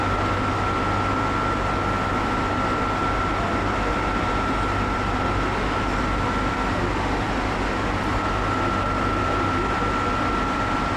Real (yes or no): yes